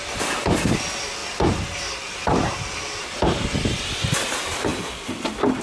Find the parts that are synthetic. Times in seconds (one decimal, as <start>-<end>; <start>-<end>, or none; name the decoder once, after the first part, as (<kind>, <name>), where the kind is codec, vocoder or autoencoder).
none